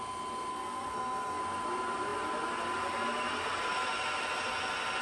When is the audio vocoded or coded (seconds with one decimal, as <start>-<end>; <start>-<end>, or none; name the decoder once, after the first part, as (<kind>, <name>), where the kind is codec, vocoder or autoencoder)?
0.5-1.4 (codec, SNAC)